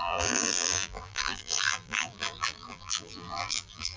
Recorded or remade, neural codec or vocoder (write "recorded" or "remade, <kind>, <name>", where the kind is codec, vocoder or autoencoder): remade, vocoder, BigVGAN v2